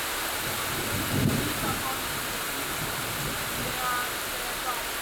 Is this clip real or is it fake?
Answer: real